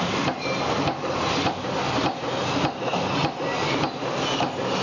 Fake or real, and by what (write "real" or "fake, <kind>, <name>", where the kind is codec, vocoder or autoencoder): real